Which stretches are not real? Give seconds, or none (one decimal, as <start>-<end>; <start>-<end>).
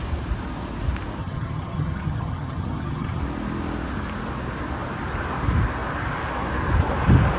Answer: 1.2-3.2